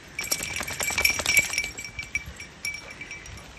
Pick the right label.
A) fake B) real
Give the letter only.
B